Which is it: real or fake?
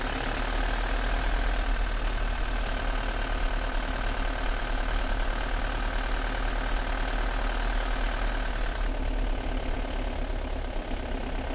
real